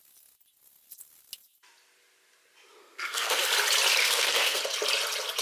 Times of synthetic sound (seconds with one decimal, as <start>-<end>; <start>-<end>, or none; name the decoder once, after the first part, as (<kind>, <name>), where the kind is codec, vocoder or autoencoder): 2.8-3.4 (codec, SNAC); 4.0-4.6